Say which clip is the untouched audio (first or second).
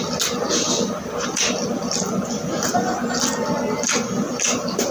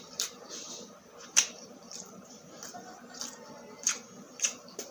first